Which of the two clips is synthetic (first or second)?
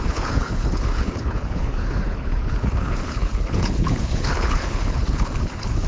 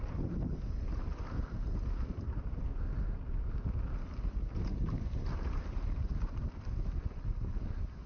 first